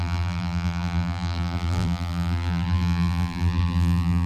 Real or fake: fake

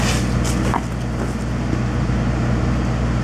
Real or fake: real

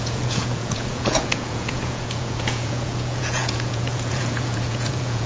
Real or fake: fake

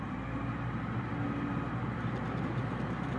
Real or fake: fake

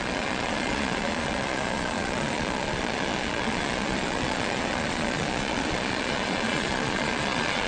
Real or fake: fake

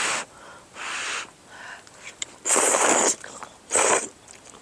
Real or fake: real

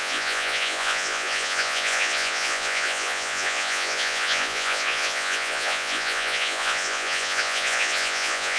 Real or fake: fake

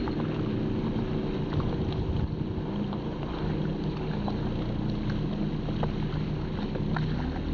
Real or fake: real